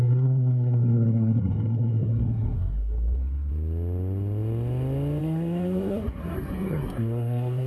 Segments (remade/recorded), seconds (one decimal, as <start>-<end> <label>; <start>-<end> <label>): 0.0-3.5 remade; 3.5-5.2 recorded; 5.2-7.7 remade